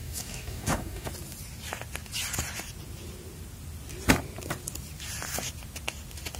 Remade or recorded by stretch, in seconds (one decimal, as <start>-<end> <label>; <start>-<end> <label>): 0.0-1.1 remade; 1.1-6.4 recorded